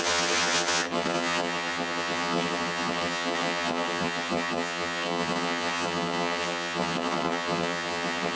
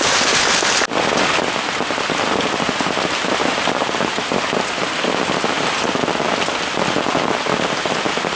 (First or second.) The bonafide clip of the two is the second